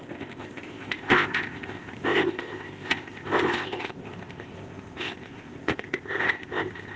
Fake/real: fake